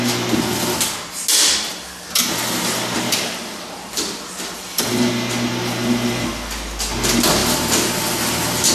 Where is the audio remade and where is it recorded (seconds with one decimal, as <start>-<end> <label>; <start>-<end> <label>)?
0.0-1.7 recorded; 1.7-5.1 remade; 5.1-7.4 recorded; 7.4-8.7 remade